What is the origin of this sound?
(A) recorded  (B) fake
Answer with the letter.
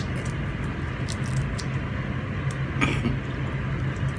A